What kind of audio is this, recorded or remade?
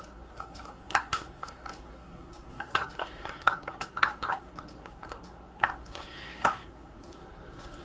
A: remade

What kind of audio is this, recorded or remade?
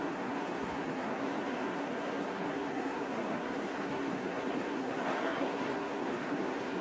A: remade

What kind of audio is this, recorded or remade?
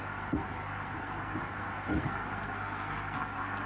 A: remade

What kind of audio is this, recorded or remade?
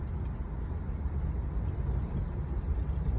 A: recorded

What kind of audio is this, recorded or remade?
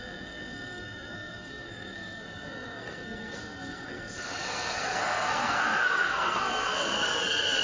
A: remade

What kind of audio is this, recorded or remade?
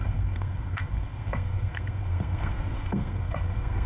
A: remade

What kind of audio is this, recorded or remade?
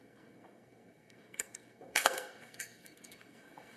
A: remade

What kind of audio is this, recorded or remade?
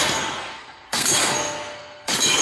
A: remade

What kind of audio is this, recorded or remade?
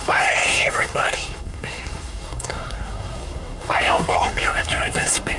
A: remade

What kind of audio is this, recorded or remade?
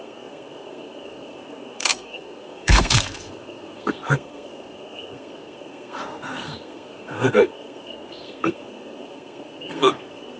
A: remade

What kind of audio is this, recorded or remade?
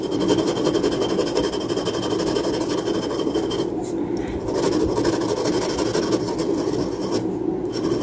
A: recorded